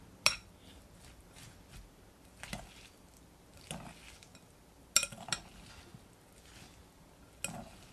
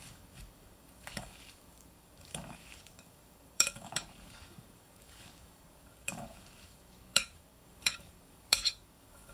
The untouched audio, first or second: first